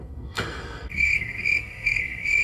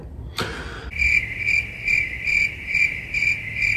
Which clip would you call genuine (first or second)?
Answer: second